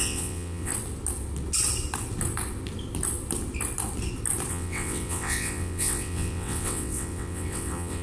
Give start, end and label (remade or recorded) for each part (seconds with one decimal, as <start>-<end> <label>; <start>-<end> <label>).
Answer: 0.0-0.7 remade; 0.7-4.5 recorded; 4.5-8.0 remade